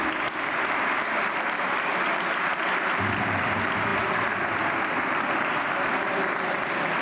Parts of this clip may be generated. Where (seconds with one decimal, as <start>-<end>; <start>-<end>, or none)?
none